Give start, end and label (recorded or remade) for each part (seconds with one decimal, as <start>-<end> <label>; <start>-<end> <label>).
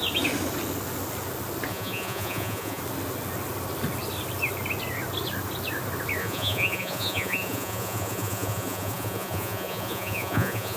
0.0-1.7 recorded; 1.7-2.8 remade; 2.8-6.2 recorded; 6.2-10.8 remade